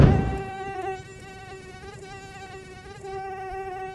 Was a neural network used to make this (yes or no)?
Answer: no